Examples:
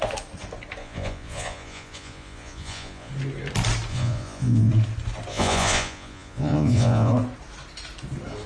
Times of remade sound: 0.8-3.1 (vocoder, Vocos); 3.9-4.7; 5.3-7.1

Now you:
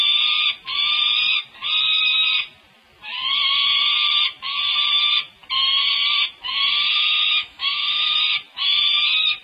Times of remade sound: 6.9-8.2 (autoencoder, DAC-VAE)